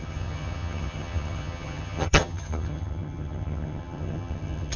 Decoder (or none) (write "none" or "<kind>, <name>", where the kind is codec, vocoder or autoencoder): vocoder, HiFi-GAN